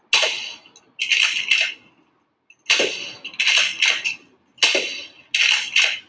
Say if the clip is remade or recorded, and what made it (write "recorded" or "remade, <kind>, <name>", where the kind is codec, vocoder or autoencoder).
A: recorded